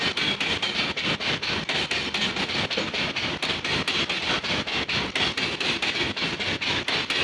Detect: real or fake real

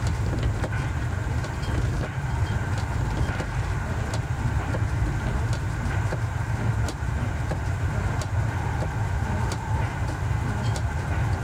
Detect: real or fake real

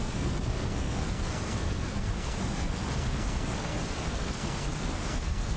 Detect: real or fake fake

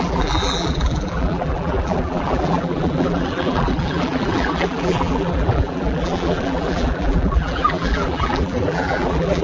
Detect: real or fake fake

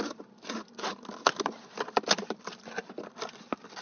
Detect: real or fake real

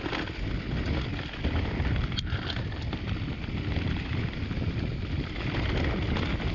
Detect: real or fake real